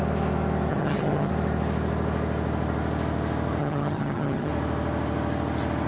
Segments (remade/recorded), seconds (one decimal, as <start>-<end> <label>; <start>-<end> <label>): 0.0-0.7 recorded; 0.7-1.3 remade; 1.3-3.6 recorded; 3.6-4.5 remade; 4.5-5.9 recorded